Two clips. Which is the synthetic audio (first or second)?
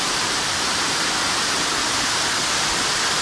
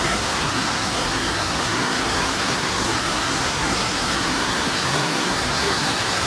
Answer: second